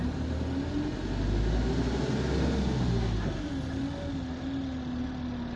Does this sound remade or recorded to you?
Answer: recorded